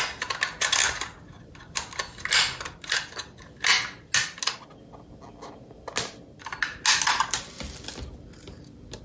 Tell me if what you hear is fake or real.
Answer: real